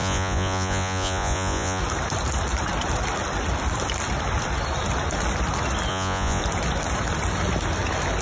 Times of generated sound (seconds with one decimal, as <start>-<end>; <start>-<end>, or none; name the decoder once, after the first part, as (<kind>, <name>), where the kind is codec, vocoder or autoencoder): 0.0-1.8 (vocoder, Vocos); 5.9-6.4